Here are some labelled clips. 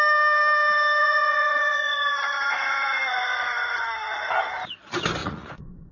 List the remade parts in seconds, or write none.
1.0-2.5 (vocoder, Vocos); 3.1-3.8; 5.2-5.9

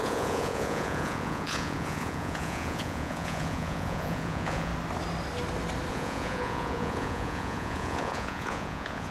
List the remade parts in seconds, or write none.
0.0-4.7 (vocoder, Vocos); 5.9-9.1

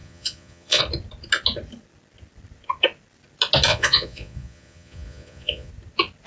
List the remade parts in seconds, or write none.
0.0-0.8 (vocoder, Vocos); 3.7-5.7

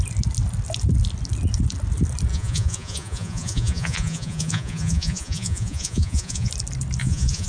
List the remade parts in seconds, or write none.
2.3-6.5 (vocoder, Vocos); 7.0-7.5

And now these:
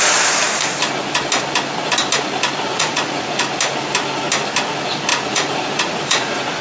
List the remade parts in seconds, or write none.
2.7-3.5 (vocoder, Vocos); 5.1-6.6

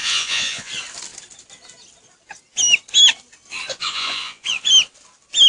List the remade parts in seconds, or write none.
0.0-0.7 (vocoder, Vocos); 3.7-4.7